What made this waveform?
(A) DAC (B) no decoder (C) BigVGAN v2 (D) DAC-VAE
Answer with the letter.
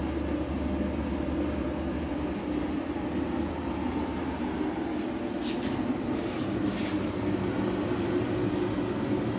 B